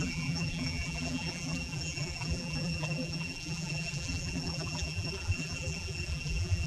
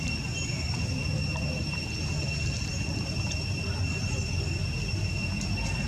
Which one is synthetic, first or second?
first